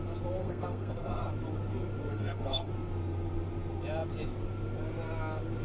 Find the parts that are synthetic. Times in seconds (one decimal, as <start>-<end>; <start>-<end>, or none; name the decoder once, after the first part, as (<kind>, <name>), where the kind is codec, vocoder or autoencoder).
0.4-1.3 (codec, SNAC); 2.1-2.7